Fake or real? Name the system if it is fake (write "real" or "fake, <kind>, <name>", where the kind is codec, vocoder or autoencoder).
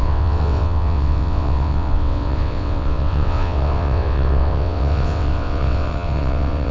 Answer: fake, vocoder, WaveNeXt